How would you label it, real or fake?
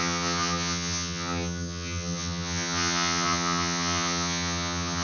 fake